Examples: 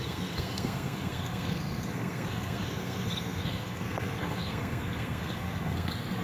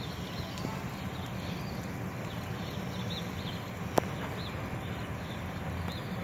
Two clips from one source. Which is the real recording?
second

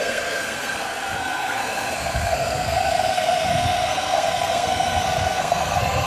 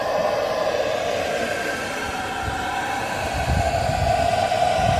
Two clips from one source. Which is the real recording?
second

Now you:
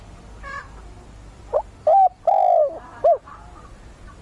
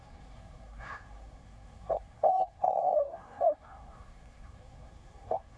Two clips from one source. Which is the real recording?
first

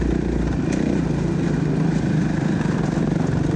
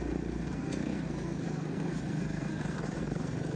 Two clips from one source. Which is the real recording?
first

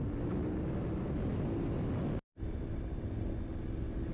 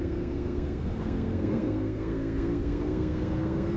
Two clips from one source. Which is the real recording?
first